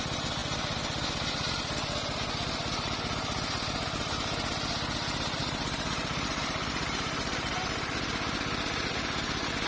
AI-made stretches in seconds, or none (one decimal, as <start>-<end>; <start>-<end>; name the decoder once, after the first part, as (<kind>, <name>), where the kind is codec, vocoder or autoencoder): 5.4-7.9 (vocoder, BigVGAN v2)